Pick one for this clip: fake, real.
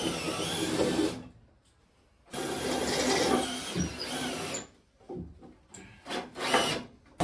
real